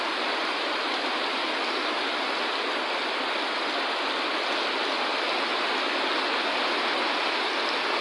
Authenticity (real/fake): real